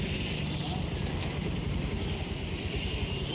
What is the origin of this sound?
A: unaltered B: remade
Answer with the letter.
A